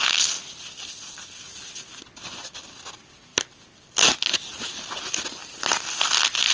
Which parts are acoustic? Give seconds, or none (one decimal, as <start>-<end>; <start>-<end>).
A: 0.0-6.5